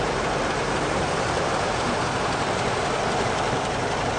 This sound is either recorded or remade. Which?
remade